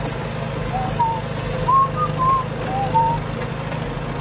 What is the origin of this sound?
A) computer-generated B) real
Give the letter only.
B